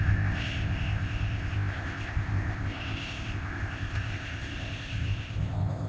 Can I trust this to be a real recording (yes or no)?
no